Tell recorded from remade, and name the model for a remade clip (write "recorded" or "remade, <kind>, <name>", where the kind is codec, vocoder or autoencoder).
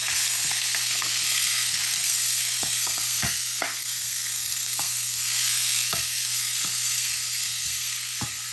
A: remade, codec, SNAC